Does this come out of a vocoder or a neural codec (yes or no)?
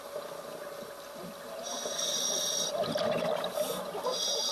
no